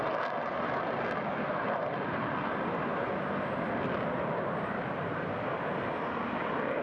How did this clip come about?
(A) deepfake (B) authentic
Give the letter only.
B